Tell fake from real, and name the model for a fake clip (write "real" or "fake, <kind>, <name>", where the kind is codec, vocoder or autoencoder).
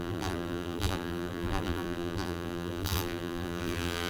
fake, vocoder, BigVGAN v2